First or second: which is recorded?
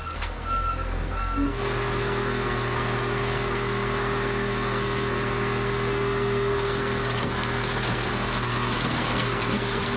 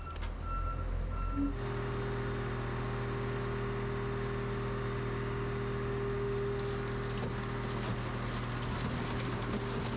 second